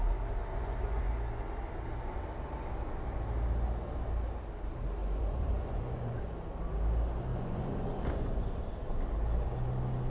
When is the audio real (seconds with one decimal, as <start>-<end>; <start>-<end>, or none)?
0.0-0.5; 1.1-5.0; 6.2-7.3; 8.6-10.1